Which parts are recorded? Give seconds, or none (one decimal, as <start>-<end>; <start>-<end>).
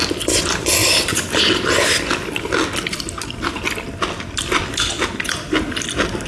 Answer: 0.0-6.3